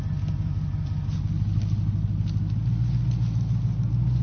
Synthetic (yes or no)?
no